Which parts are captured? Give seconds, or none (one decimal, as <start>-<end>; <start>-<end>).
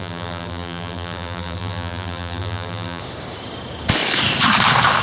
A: 3.0-5.0